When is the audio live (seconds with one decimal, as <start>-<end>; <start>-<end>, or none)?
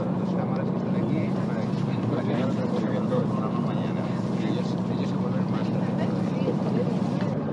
0.0-7.5